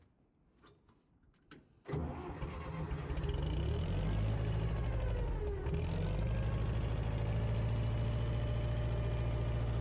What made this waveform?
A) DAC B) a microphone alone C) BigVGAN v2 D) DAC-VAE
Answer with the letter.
B